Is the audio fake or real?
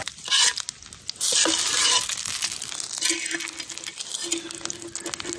real